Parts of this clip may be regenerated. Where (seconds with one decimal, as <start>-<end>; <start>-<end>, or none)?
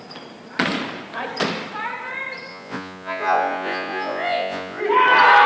2.5-4.8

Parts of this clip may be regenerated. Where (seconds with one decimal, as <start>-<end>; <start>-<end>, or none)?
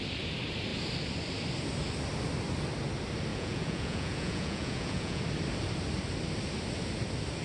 3.3-5.2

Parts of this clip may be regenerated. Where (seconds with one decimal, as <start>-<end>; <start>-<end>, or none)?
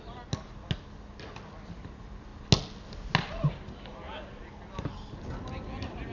none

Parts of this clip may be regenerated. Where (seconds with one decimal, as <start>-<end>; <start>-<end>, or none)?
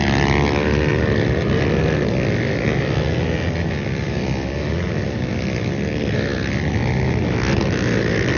none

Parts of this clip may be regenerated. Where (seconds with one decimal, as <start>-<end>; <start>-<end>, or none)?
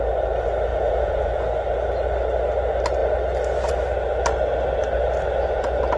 0.7-1.4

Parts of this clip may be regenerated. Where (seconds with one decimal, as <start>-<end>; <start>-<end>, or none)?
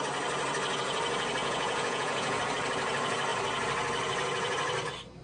1.4-2.4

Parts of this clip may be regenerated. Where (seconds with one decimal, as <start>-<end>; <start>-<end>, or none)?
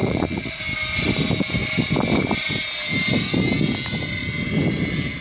0.0-0.6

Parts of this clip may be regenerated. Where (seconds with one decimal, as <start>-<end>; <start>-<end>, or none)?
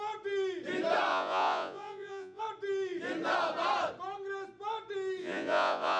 1.1-2.4; 5.2-6.0